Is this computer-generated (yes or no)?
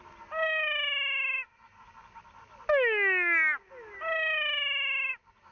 no